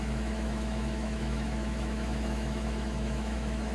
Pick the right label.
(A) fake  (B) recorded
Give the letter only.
A